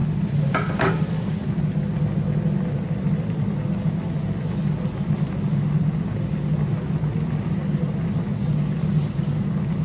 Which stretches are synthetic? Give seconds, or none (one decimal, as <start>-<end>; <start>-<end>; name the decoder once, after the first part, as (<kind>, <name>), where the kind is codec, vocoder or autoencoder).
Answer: 0.0-1.1 (vocoder, BigVGAN v2)